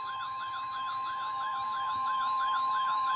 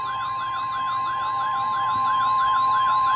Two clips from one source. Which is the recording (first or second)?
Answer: second